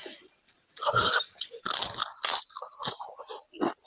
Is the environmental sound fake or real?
real